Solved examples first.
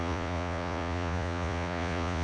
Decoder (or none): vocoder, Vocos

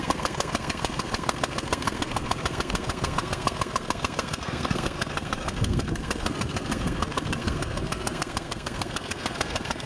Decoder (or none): codec, SNAC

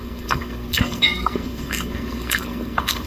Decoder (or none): codec, SNAC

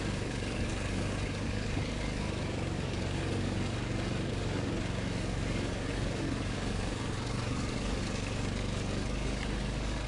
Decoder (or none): codec, DAC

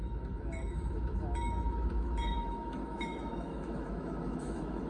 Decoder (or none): autoencoder, DAC-VAE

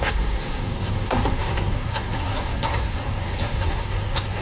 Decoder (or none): codec, SNAC